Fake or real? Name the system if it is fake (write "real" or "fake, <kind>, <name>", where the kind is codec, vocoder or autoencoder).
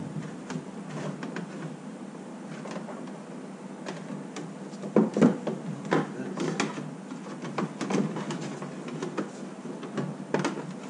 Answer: real